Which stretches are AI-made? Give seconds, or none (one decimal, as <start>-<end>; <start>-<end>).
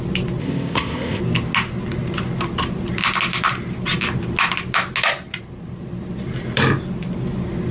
0.4-1.2